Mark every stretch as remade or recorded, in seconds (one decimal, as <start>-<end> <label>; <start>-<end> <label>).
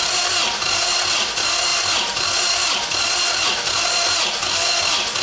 0.0-5.2 recorded